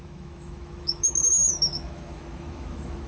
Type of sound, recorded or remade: remade